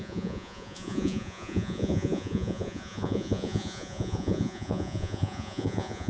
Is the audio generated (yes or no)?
yes